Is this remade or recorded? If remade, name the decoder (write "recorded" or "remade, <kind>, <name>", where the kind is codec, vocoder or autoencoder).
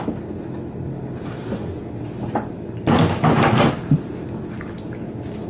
recorded